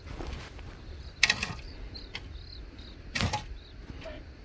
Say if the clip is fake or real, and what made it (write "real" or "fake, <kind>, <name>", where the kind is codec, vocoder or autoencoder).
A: real